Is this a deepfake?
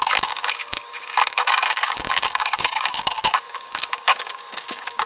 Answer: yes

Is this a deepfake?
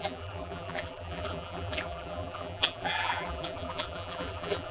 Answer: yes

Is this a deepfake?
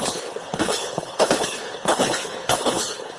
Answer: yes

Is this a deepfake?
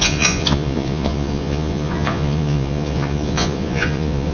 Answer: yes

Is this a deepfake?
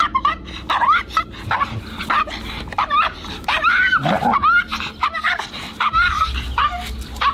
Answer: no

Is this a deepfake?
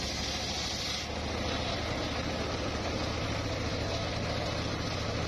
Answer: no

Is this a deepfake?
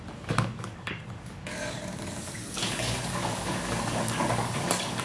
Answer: yes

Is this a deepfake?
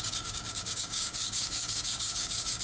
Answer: yes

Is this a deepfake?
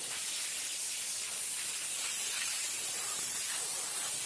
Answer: no